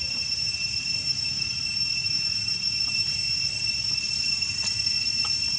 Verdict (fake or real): fake